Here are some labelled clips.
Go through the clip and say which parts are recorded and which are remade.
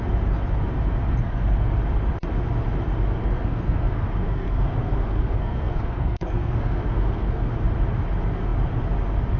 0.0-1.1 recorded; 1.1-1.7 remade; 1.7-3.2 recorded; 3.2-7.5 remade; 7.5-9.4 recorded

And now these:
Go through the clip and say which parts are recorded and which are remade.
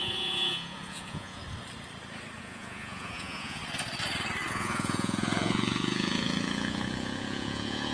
0.0-1.4 remade; 1.4-2.4 recorded; 2.4-3.6 remade; 3.6-4.5 recorded; 4.5-7.9 remade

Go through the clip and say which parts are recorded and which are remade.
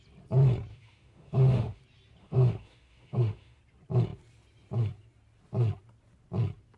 0.0-0.7 recorded; 0.7-1.8 remade; 1.8-2.2 recorded; 2.2-3.6 remade; 3.6-6.8 recorded